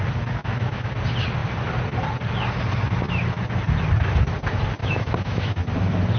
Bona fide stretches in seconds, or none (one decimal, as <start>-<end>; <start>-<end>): 0.0-0.4; 0.9-4.8; 5.6-6.2